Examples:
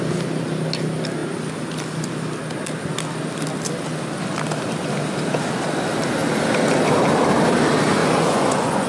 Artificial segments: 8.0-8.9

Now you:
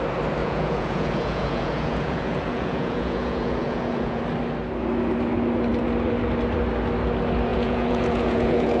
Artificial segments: 0.4-4.2; 7.5-8.8

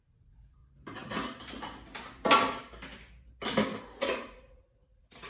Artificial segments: 0.0-0.6; 3.8-5.3

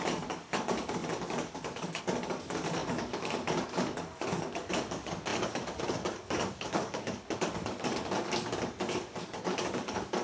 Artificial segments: 0.0-10.2

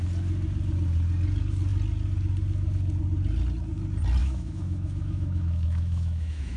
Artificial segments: 4.2-6.6

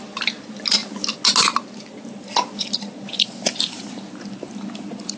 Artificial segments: none

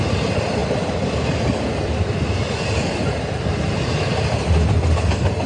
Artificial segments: none

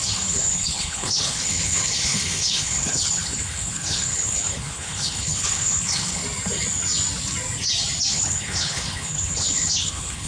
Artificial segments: 0.0-6.2; 8.1-10.3